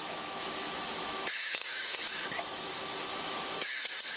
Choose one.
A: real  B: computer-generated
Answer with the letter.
B